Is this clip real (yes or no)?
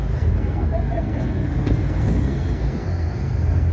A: no